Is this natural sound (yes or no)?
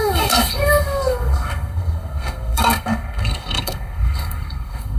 no